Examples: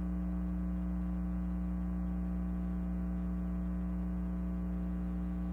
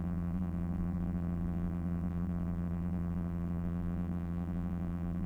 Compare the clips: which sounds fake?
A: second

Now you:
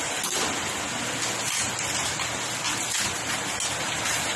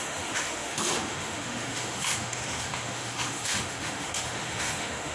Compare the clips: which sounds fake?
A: second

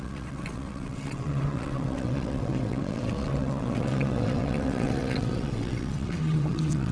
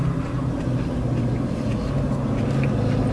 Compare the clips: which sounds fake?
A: first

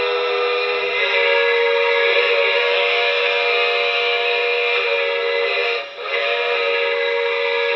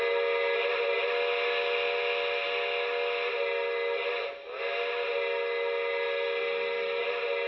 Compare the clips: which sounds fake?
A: first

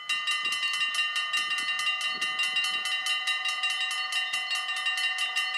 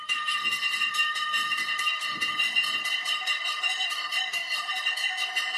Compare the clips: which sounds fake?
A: second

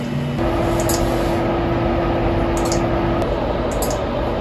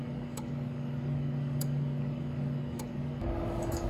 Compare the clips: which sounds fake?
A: second